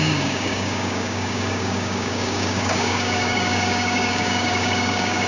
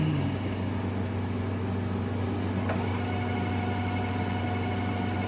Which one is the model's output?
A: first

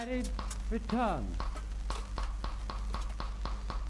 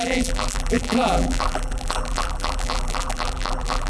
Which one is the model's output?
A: second